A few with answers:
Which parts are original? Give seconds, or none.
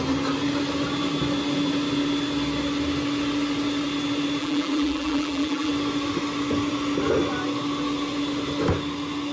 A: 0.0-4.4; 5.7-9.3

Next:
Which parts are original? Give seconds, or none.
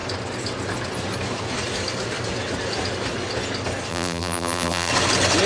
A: 0.0-3.9; 4.9-5.5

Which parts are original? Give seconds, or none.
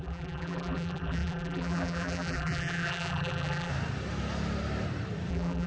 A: 3.7-5.3